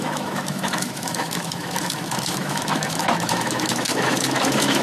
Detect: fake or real fake